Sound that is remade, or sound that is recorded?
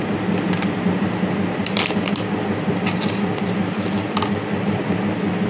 recorded